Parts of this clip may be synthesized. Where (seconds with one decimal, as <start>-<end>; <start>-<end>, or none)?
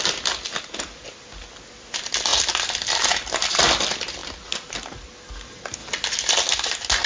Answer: 2.3-3.8